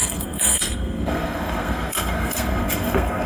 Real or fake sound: fake